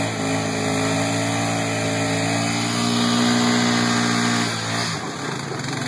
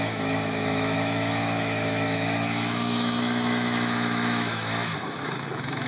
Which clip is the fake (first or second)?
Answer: second